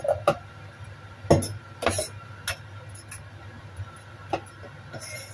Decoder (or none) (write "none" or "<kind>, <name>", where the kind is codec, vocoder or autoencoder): none